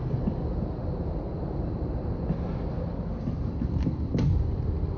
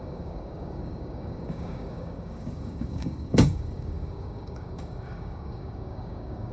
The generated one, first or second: second